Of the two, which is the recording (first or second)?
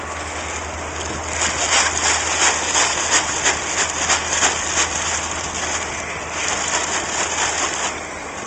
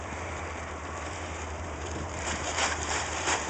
first